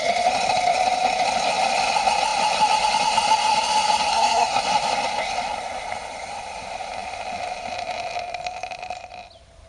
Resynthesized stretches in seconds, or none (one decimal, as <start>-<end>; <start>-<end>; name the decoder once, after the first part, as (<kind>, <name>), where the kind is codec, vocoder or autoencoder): 4.1-4.6 (codec, SNAC)